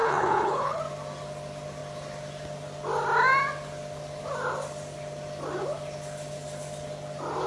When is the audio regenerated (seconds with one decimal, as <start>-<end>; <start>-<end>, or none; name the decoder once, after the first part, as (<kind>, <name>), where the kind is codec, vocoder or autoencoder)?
0.0-0.8 (codec, HILCodec)